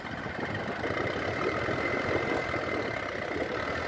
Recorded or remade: recorded